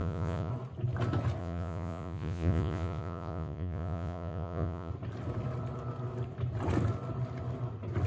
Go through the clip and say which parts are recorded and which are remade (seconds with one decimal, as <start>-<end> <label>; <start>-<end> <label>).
0.0-0.5 remade; 0.5-1.4 recorded; 1.4-4.9 remade; 4.9-8.1 recorded